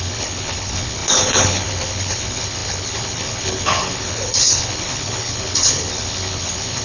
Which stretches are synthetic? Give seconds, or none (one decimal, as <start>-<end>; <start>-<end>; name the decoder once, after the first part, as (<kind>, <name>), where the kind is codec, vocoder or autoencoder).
0.0-6.8 (codec, HILCodec)